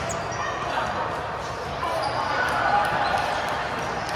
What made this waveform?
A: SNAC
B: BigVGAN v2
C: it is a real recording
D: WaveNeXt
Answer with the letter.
C